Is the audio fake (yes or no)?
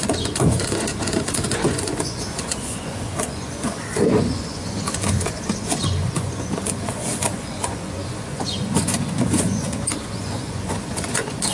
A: yes